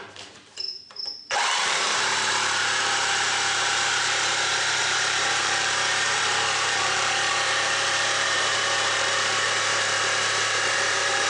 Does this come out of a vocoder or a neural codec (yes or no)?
yes